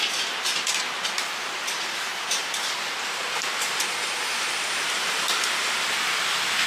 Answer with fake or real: real